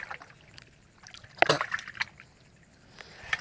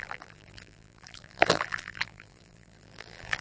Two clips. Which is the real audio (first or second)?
first